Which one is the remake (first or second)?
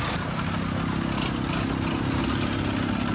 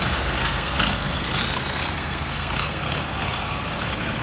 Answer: second